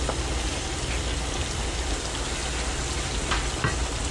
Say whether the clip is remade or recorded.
recorded